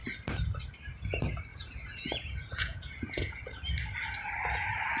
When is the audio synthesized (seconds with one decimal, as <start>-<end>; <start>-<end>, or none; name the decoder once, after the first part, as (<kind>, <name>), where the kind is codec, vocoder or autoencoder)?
1.5-3.4 (vocoder, Vocos)